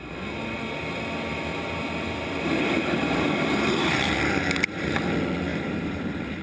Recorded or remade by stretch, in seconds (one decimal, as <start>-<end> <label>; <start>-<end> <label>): 0.0-1.5 recorded; 1.5-5.1 remade; 5.1-5.5 recorded; 5.5-6.4 remade